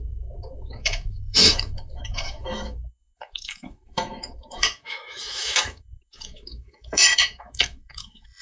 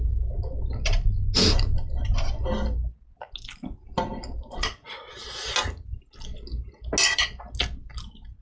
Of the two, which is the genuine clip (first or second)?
second